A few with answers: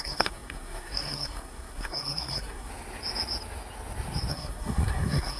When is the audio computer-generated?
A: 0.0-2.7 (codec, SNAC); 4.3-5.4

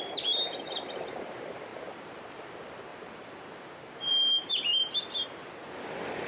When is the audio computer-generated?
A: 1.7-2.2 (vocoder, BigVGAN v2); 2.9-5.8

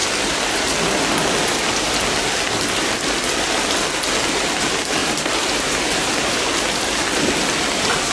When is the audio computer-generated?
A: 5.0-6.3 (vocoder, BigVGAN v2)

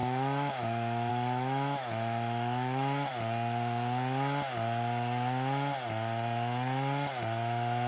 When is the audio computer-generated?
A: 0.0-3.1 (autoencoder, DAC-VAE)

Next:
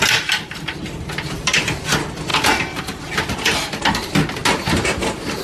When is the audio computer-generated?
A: none

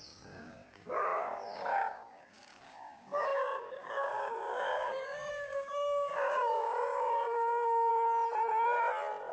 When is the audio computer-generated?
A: 0.0-7.9 (codec, DAC)